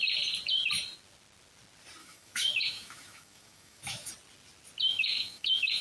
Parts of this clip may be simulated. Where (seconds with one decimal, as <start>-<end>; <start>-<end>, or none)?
2.0-4.1; 4.9-5.8